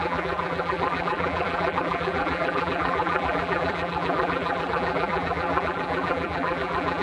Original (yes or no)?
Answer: no